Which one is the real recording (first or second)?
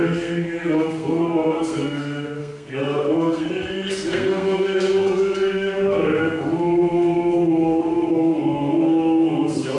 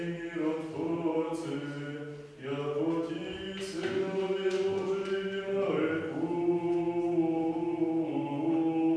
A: second